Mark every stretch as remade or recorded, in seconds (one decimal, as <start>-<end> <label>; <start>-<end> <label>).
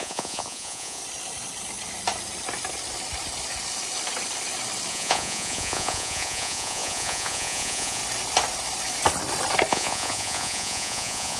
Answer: 0.0-1.0 remade; 1.0-4.9 recorded; 4.9-8.0 remade; 8.0-9.7 recorded; 9.7-11.4 remade